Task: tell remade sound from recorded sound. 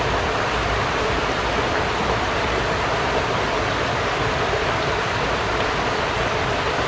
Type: remade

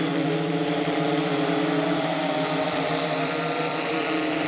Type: remade